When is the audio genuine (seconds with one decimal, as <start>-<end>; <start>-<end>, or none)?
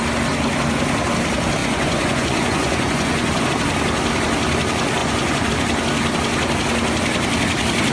0.0-1.6; 3.5-5.0; 5.5-7.9